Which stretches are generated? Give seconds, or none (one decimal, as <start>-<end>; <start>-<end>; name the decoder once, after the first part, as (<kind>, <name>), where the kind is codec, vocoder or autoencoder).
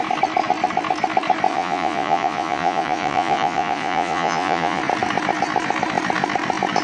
1.5-4.8 (vocoder, Vocos)